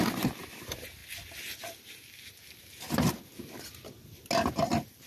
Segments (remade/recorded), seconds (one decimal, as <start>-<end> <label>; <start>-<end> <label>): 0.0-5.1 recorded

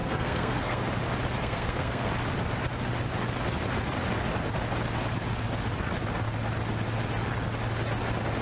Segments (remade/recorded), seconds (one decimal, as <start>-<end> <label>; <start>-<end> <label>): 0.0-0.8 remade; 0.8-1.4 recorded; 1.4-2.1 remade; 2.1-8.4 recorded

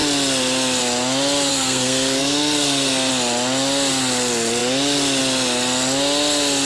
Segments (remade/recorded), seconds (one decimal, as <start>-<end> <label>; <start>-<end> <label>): 0.0-1.5 recorded; 1.5-3.1 remade; 3.1-6.6 recorded

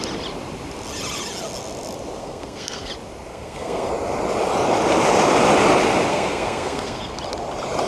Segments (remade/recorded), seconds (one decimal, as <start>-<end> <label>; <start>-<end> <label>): 0.0-2.2 recorded; 2.2-2.9 remade; 2.9-3.3 recorded; 3.3-3.9 remade; 3.9-6.1 recorded; 6.1-7.2 remade; 7.2-7.9 recorded

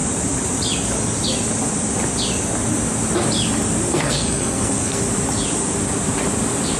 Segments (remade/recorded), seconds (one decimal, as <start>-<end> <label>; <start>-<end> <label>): 0.0-3.9 recorded; 3.9-5.0 remade; 5.0-6.8 recorded